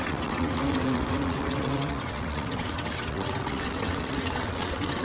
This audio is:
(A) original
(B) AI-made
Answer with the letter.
B